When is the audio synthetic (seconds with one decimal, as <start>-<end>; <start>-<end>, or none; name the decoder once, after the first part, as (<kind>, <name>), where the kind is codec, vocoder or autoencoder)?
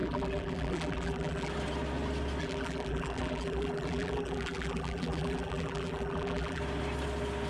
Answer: 0.0-1.5 (vocoder, BigVGAN v2); 2.4-6.6